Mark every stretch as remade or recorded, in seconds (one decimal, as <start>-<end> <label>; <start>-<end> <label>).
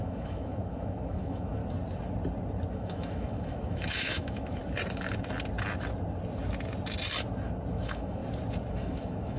0.0-1.6 remade; 1.6-2.7 recorded; 2.7-4.6 remade; 4.6-7.7 recorded; 7.7-8.2 remade; 8.2-8.7 recorded; 8.7-9.4 remade